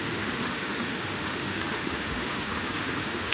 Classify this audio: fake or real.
fake